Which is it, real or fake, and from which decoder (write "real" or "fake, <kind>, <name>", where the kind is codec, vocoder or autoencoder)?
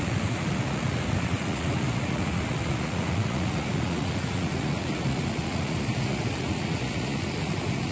fake, vocoder, Vocos